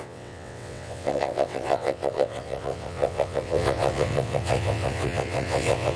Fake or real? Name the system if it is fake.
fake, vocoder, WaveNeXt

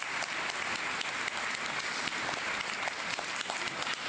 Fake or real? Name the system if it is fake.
real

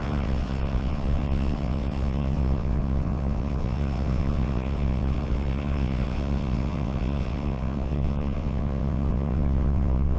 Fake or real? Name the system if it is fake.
fake, vocoder, WaveNeXt